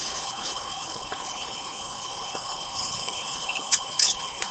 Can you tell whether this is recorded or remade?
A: remade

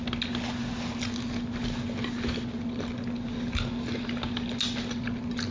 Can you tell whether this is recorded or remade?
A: recorded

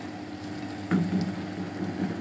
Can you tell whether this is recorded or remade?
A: recorded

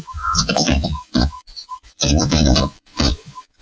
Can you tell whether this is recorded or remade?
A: remade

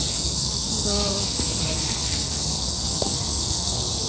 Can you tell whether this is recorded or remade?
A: remade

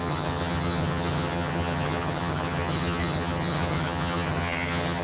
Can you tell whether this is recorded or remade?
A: remade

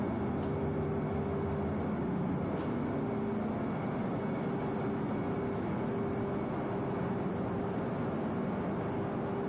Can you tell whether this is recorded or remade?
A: recorded